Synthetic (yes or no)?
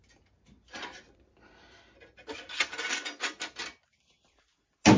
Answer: no